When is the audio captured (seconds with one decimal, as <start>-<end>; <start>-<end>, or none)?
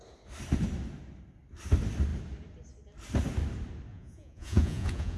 0.0-3.9